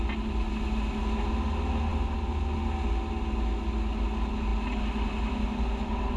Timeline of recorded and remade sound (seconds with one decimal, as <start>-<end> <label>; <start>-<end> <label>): 0.0-6.2 recorded